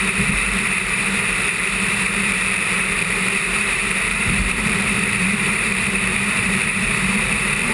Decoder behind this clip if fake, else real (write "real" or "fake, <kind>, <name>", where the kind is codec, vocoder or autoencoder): fake, vocoder, BigVGAN v2